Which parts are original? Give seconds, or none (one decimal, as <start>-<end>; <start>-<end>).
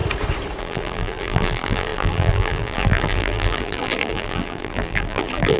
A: 0.0-0.6